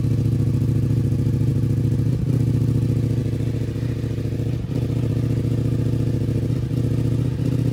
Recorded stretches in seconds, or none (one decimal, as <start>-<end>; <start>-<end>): 0.0-7.7